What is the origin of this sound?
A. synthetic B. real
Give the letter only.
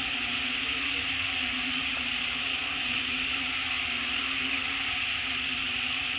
B